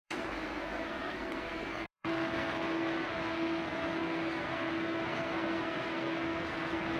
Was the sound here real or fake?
fake